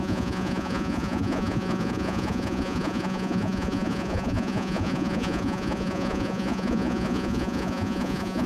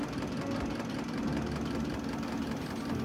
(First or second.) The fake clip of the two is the first